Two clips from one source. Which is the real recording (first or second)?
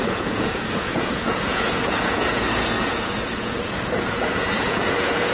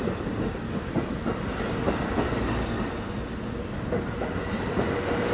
second